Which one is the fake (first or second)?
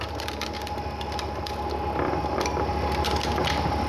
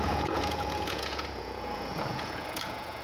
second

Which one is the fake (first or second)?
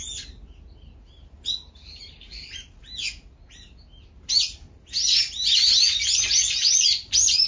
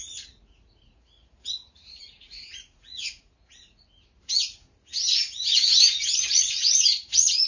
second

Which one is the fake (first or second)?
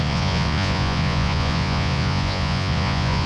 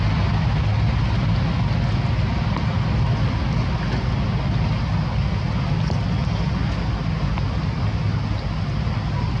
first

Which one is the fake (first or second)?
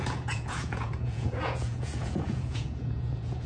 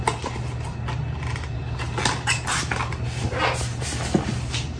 first